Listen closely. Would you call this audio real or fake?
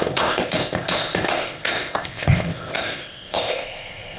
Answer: fake